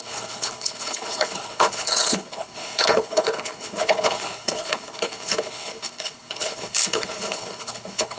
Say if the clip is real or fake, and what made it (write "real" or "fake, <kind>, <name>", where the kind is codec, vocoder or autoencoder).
fake, codec, HILCodec